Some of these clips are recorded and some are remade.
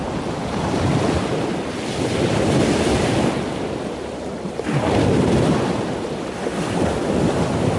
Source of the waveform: recorded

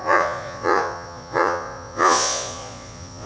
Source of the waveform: remade